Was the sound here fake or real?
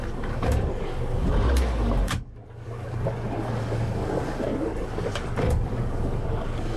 fake